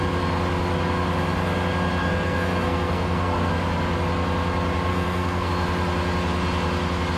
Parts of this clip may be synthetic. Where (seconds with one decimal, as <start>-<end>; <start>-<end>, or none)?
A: 2.0-3.5; 4.9-5.5